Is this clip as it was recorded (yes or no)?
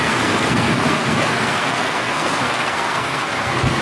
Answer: no